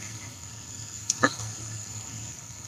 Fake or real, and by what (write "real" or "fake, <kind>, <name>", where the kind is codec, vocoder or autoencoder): fake, codec, SNAC